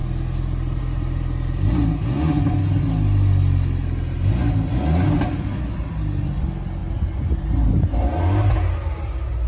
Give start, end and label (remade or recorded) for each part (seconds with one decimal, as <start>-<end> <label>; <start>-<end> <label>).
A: 0.0-9.5 recorded